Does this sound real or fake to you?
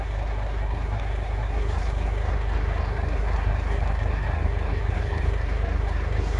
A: fake